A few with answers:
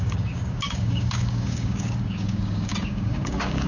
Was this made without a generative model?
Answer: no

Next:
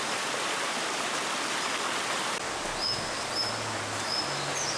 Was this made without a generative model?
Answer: yes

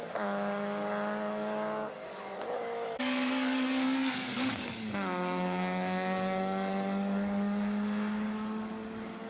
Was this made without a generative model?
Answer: no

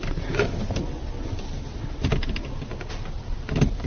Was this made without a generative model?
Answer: yes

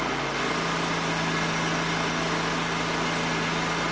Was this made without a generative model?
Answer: yes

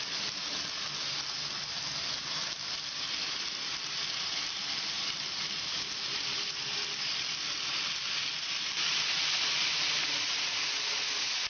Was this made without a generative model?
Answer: yes